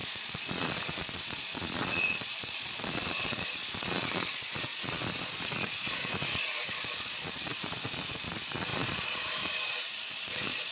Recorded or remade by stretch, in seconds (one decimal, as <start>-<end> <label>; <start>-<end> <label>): 0.0-10.7 remade